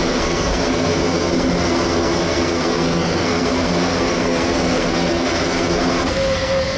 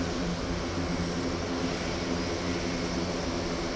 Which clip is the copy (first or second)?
first